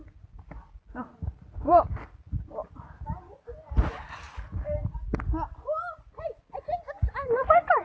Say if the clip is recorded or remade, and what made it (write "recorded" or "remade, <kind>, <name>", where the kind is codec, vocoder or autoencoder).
recorded